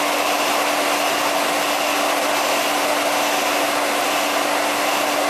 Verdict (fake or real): real